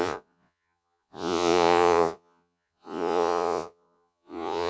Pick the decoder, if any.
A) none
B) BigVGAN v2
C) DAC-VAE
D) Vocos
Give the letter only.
D